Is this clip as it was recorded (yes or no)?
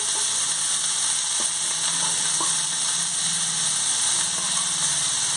yes